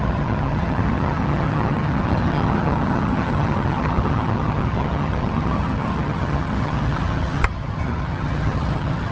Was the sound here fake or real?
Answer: fake